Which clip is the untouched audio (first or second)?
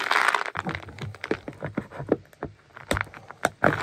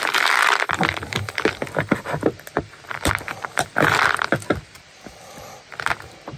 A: first